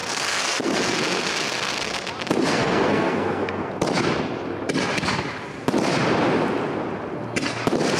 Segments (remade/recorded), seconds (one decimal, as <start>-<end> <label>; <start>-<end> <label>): 0.0-2.1 remade; 2.1-2.5 recorded; 2.5-3.7 remade; 3.7-8.0 recorded